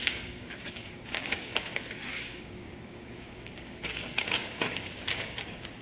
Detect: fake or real fake